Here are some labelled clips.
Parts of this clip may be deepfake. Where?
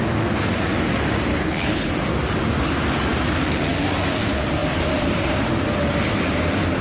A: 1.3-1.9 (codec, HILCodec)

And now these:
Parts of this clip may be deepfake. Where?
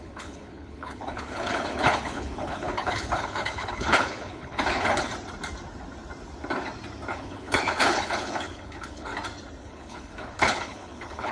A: 0.0-5.1 (codec, HILCodec); 7.1-9.1; 9.6-11.3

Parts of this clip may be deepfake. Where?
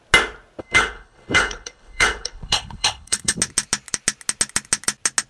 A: 0.6-3.4 (codec, HILCodec)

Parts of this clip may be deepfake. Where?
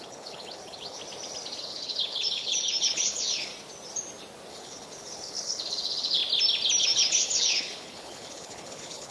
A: 0.0-1.0 (codec, HILCodec); 1.6-3.5; 4.5-6.2; 6.8-9.1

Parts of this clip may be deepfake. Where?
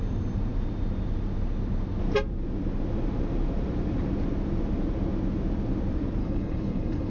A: 6.2-7.1 (codec, HILCodec)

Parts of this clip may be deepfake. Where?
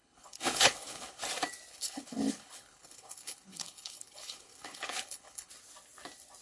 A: 0.0-1.2 (codec, HILCodec); 1.7-5.5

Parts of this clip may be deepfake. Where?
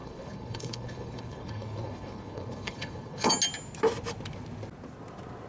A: 0.0-3.3 (codec, HILCodec)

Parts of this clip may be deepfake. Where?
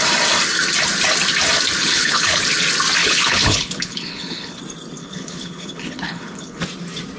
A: 1.8-2.4 (codec, HILCodec); 3.0-4.6; 5.0-6.6